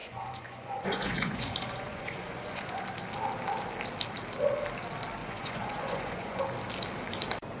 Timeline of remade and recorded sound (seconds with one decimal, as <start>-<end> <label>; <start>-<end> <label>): 0.0-2.8 remade; 2.8-5.2 recorded; 5.2-6.4 remade; 6.4-7.6 recorded